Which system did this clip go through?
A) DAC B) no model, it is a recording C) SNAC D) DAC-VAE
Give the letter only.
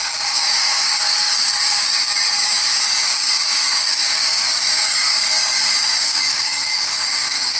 A